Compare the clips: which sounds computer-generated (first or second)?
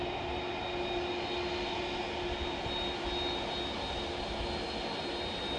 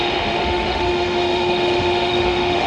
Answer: second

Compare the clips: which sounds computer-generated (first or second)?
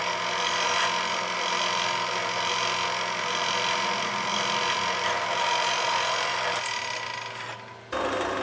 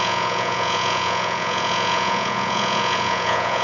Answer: second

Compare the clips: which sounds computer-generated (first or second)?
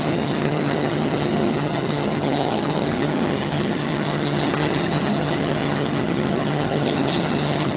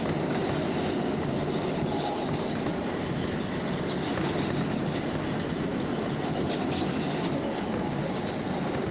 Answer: first